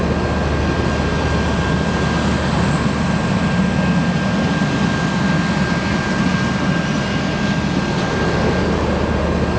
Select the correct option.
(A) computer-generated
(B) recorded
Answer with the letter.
B